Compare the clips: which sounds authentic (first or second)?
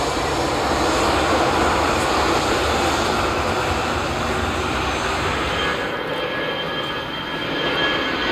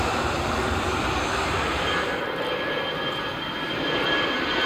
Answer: first